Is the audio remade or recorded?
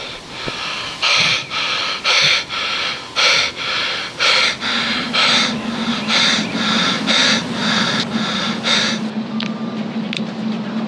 recorded